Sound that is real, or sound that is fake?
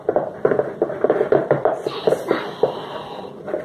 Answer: real